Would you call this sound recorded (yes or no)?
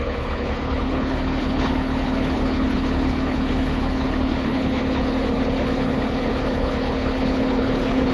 no